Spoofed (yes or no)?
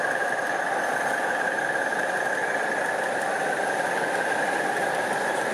no